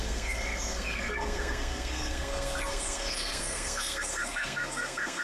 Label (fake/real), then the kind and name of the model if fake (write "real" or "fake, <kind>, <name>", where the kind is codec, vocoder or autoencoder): fake, codec, SNAC